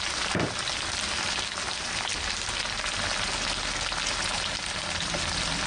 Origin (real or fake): real